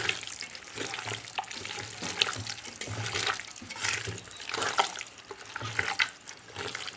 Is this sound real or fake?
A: real